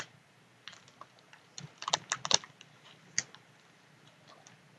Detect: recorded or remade recorded